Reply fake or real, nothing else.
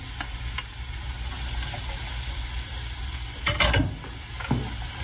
real